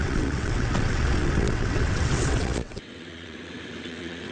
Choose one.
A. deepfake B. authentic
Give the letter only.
A